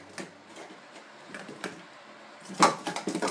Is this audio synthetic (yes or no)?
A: no